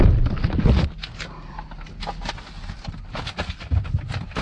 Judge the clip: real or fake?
real